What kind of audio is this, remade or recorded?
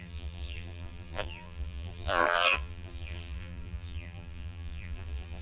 remade